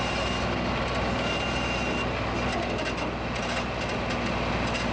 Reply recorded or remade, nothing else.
recorded